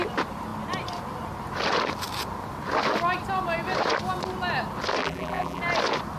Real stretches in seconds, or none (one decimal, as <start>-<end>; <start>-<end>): 0.0-5.0; 5.6-6.2